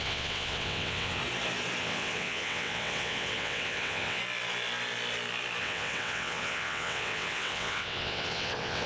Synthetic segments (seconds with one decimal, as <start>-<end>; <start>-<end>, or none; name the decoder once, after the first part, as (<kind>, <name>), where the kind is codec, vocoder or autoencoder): 0.0-1.2 (vocoder, WaveNeXt); 1.8-4.2; 5.6-8.9

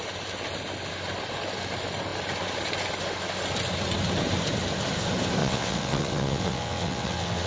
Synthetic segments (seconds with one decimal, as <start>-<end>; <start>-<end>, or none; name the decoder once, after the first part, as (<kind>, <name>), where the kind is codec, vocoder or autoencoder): 5.4-7.5 (vocoder, WaveNeXt)